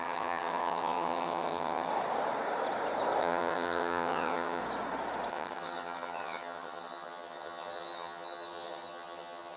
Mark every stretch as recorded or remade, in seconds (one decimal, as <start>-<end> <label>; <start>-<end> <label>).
0.0-1.9 remade; 1.9-3.2 recorded; 3.2-4.6 remade; 4.6-5.3 recorded; 5.3-9.6 remade